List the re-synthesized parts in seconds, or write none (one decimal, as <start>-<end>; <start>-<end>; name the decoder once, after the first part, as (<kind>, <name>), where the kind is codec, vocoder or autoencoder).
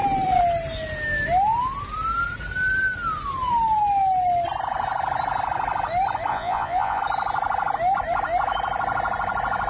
6.3-7.0 (vocoder, Vocos)